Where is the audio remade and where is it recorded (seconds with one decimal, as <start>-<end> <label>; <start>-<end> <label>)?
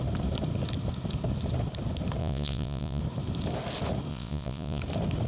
0.0-2.2 recorded; 2.2-3.0 remade; 3.0-4.1 recorded; 4.1-4.8 remade; 4.8-5.3 recorded